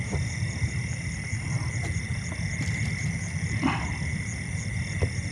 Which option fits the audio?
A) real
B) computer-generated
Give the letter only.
A